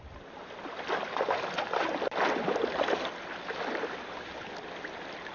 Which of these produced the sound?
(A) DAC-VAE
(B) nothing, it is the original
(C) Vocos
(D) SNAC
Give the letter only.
B